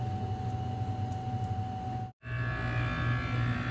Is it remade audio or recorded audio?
recorded